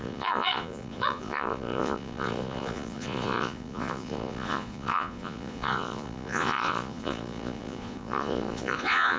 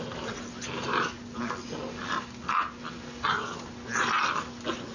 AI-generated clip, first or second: first